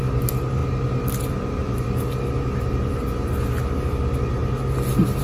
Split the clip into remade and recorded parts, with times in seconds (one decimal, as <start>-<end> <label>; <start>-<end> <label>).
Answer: 0.0-5.2 recorded

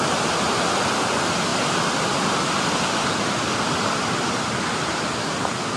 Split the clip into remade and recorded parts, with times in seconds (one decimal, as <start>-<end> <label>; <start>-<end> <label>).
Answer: 0.0-5.8 recorded

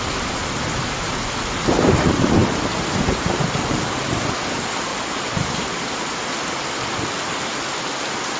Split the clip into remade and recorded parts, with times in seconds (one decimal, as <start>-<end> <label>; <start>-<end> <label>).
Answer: 0.0-2.4 recorded; 2.4-4.2 remade; 4.2-4.9 recorded; 4.9-5.9 remade; 5.9-8.4 recorded

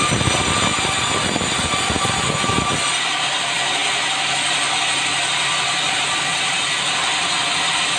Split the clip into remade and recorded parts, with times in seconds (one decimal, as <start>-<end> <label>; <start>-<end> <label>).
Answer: 0.0-8.0 recorded

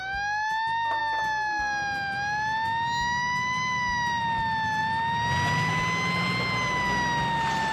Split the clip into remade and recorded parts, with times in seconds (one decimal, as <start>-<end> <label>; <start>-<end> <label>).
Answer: 0.0-7.7 recorded

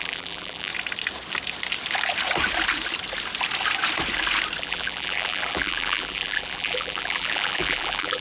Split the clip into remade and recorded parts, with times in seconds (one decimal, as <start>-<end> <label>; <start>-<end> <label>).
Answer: 0.0-0.7 remade; 0.7-4.6 recorded; 4.6-8.2 remade

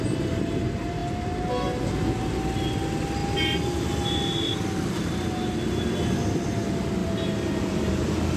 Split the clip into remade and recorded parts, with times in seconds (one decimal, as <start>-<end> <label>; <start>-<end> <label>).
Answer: 0.0-8.4 recorded